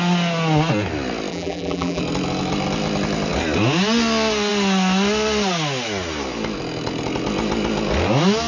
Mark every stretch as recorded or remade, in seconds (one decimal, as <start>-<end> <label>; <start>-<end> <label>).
0.0-1.3 recorded; 1.3-2.0 remade; 2.0-8.5 recorded